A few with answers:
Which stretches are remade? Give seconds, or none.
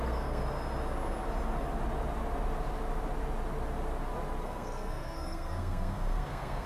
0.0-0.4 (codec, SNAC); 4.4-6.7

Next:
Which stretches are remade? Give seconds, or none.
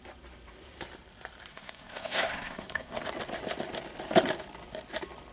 1.5-3.0 (codec, SNAC)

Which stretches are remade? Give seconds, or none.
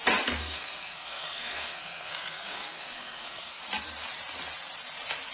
0.4-3.6 (codec, SNAC)